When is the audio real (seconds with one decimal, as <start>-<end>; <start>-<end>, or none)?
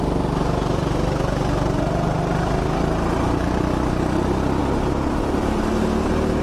0.0-6.4